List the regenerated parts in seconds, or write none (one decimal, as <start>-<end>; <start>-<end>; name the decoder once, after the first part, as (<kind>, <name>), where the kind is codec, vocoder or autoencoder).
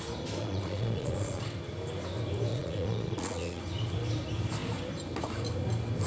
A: 0.4-1.4 (vocoder, Vocos); 2.5-3.6